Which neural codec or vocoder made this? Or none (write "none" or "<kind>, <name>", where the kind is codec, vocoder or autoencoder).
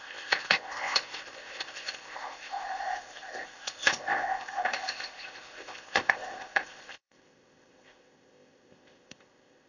codec, ZipCodec